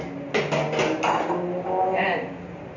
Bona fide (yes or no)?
yes